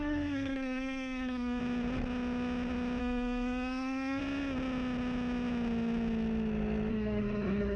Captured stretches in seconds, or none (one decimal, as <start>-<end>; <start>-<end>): 1.6-3.0; 4.2-6.9